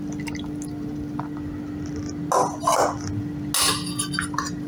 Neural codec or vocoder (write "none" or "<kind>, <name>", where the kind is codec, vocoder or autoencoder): none